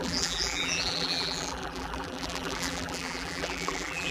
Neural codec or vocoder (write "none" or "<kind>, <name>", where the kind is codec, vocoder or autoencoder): vocoder, BigVGAN v2